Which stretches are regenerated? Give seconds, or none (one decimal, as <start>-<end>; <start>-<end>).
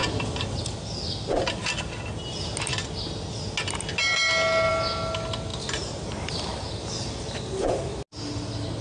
none